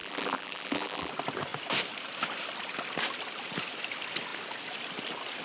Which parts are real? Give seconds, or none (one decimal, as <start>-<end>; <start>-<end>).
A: 1.1-5.4